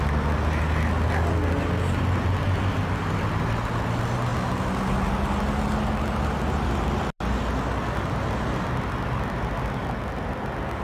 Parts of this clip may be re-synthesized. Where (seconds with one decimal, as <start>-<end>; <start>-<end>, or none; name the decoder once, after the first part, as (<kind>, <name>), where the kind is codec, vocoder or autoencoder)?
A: none